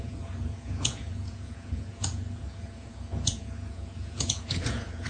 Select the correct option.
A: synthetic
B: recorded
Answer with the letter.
A